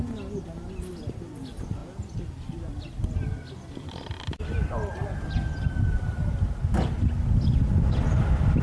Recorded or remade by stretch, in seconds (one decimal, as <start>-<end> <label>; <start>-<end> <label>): 0.0-8.6 recorded